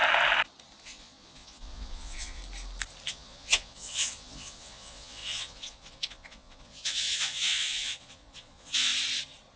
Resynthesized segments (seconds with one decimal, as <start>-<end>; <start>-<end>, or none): 0.8-2.4; 3.1-8.9

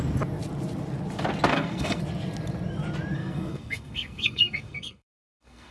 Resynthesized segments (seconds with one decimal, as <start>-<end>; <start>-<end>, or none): 1.5-2.0; 3.2-5.7

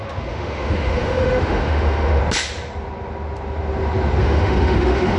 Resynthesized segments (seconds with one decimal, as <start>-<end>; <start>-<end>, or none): 0.0-2.2; 4.2-5.2

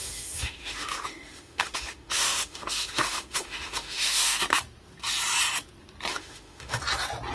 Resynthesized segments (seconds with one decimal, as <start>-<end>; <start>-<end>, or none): 0.0-4.4; 6.1-6.8

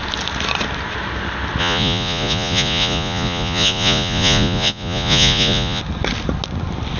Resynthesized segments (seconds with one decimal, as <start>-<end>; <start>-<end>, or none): 1.6-5.8